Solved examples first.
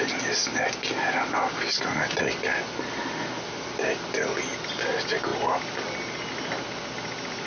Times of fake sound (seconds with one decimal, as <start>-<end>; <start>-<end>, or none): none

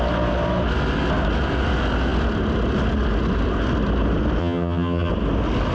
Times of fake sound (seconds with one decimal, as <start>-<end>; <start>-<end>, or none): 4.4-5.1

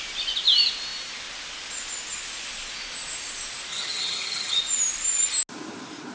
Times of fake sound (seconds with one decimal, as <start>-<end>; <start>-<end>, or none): 3.7-4.6